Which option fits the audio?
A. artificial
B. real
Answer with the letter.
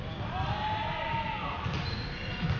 B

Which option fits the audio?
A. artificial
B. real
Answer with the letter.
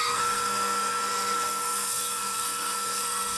A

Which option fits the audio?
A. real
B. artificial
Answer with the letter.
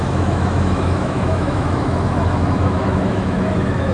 B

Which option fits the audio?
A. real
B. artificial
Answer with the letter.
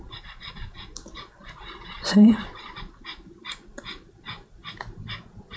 B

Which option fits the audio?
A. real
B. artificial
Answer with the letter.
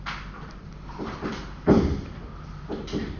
A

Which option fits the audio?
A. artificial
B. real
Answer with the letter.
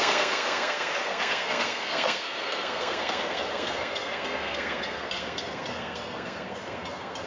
A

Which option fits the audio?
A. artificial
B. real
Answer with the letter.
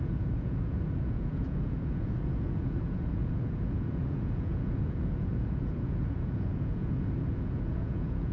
A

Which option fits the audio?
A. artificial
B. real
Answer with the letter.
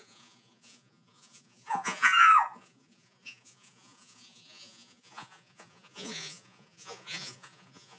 A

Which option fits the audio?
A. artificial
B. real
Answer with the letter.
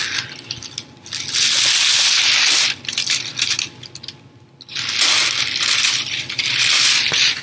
B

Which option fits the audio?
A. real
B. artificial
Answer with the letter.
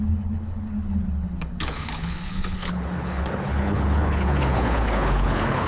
B